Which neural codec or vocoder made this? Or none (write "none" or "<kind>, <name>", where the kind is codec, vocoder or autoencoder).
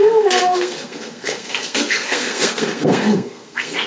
codec, SNAC